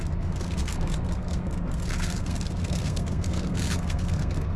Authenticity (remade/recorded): remade